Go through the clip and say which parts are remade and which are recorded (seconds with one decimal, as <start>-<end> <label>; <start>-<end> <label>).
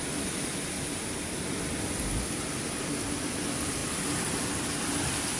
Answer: 0.0-5.4 recorded